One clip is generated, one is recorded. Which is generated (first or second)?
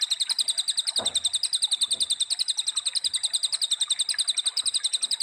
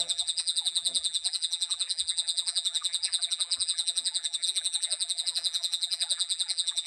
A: second